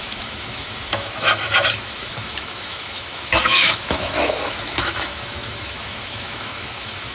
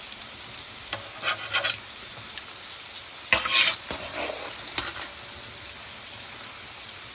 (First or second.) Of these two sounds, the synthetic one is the first